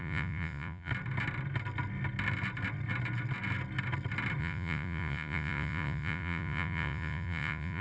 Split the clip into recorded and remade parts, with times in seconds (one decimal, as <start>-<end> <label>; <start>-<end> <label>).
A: 0.0-0.9 remade; 0.9-4.4 recorded; 4.4-7.8 remade